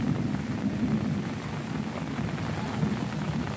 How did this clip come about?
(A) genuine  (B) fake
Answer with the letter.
A